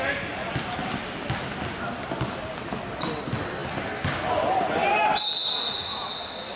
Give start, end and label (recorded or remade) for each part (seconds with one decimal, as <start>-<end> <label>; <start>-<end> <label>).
0.0-6.6 recorded